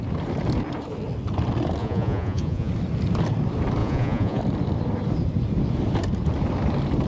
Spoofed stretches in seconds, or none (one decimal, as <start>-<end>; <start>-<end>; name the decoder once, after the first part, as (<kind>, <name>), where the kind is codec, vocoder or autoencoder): 1.8-2.7 (vocoder, Vocos); 3.8-4.4